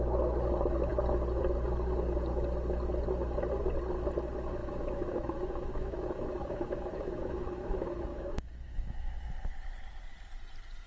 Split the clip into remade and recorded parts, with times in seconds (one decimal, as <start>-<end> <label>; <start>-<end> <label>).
0.0-4.6 recorded; 4.6-9.1 remade; 9.1-10.9 recorded

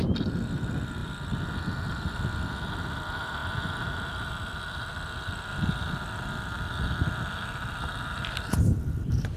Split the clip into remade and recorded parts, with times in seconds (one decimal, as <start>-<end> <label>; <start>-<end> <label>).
0.0-1.0 remade; 1.0-2.7 recorded; 2.7-9.4 remade

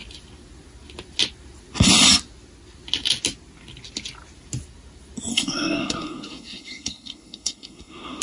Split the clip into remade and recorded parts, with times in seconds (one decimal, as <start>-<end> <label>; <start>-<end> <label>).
0.0-5.3 recorded; 5.3-8.2 remade

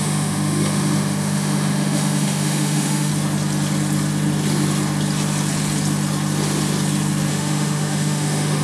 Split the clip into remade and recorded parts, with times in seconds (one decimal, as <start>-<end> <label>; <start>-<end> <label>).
0.0-3.1 remade; 3.1-7.3 recorded; 7.3-8.6 remade

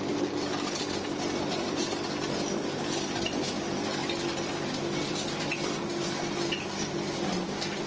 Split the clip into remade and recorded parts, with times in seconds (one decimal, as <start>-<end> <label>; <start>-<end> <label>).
0.0-7.9 recorded

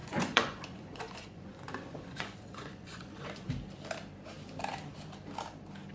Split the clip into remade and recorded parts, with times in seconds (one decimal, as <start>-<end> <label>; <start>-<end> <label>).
0.0-3.5 remade; 3.5-5.9 recorded

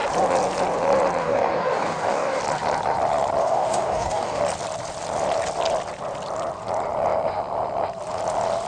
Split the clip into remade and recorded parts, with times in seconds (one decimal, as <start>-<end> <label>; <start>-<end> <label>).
0.0-1.2 recorded; 1.2-2.4 remade; 2.4-3.4 recorded; 3.4-4.4 remade; 4.4-8.7 recorded